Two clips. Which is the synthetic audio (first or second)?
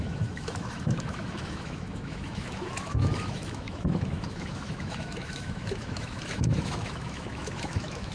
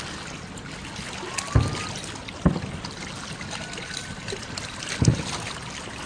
first